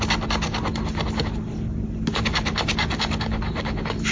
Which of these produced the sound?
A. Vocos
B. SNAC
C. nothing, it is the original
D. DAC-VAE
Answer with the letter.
C